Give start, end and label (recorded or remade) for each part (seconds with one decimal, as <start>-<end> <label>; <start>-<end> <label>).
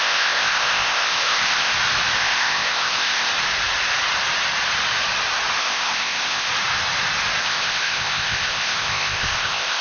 0.0-1.7 remade; 1.7-2.2 recorded; 2.2-3.3 remade; 3.3-5.6 recorded; 5.6-6.5 remade; 6.5-7.4 recorded; 7.4-9.8 remade